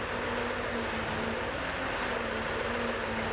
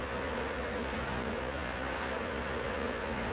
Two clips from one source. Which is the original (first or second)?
first